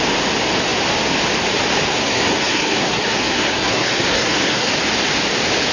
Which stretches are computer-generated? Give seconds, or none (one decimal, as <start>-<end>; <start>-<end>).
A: 1.9-4.7